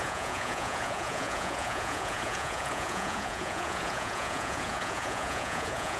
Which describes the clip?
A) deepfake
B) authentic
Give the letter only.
A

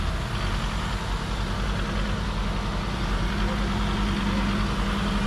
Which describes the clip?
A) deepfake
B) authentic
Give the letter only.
B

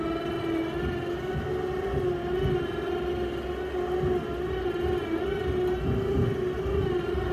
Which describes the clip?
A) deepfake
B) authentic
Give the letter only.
B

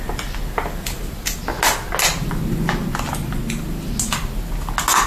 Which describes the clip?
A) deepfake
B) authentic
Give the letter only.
B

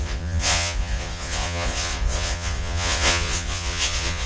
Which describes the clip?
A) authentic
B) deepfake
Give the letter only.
B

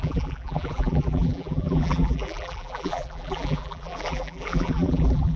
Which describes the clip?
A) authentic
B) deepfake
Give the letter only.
B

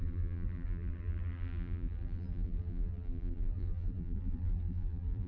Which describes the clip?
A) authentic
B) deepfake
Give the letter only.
B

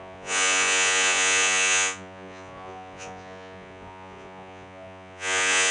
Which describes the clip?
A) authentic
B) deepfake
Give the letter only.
B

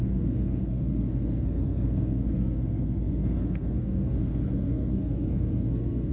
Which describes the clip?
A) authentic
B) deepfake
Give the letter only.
B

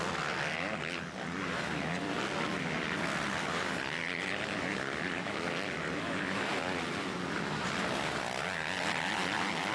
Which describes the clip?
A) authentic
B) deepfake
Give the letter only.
A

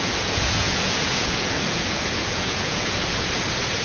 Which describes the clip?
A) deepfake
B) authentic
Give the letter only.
A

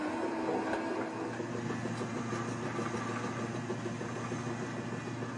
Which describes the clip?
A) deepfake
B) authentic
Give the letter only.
B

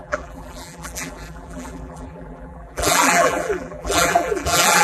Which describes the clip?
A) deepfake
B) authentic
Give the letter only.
A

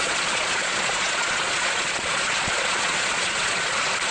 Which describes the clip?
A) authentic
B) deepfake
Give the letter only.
B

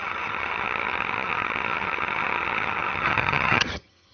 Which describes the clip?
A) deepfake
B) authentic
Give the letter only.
A